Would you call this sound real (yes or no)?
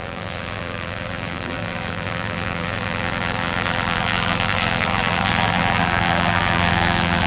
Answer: no